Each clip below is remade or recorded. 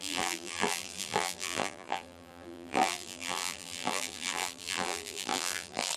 remade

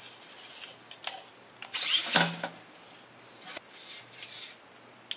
recorded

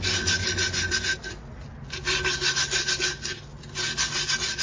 recorded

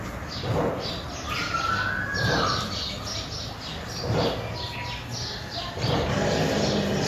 recorded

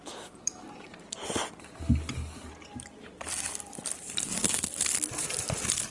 remade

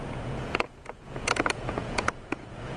remade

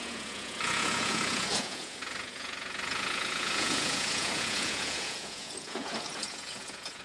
remade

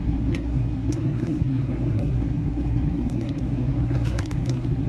remade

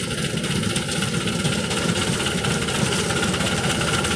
recorded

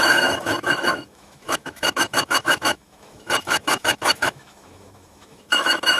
remade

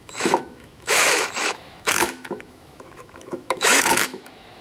remade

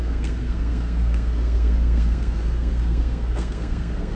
remade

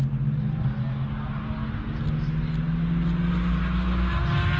recorded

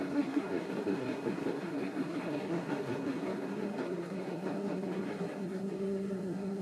remade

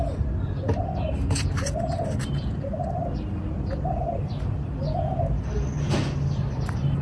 recorded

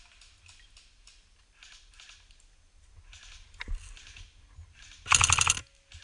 recorded